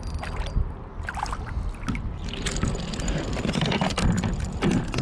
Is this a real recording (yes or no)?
yes